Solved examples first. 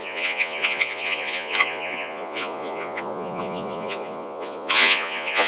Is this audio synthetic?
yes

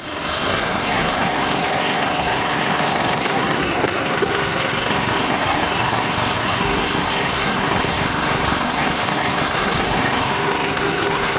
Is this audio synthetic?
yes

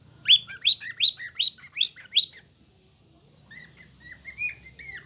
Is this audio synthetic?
no